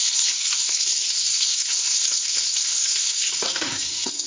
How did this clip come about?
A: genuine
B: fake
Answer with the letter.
B